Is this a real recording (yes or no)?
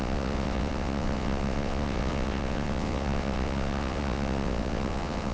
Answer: no